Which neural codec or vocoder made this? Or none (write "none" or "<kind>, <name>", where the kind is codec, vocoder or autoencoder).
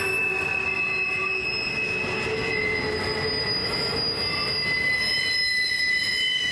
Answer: none